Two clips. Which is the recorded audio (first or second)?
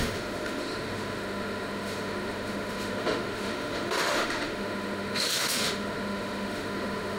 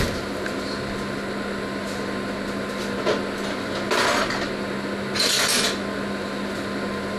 second